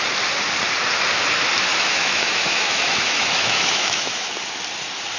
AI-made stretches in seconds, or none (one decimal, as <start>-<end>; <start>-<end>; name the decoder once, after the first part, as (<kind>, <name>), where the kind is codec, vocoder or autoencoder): 1.7-4.3 (autoencoder, DAC-VAE)